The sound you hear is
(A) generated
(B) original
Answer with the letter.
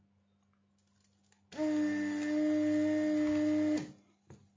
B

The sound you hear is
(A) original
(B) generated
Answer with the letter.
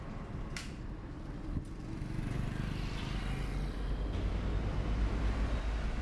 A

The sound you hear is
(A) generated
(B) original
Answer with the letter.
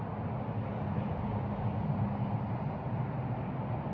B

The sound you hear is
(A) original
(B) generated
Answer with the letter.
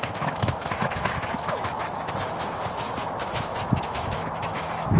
B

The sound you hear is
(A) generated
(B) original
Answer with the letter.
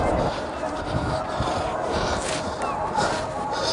B